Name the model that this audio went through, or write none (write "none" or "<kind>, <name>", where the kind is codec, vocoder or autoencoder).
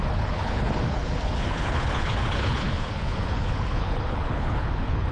codec, HILCodec